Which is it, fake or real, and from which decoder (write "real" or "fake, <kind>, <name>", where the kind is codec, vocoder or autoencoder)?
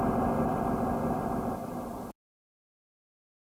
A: fake, vocoder, BigVGAN v2